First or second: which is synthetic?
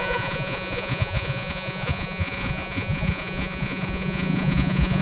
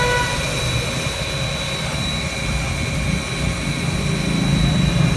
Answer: first